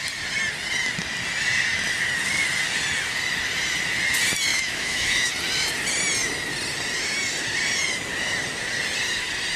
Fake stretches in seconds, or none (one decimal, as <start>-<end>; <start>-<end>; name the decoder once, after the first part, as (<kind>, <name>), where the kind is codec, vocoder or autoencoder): 4.5-5.3 (autoencoder, DAC-VAE)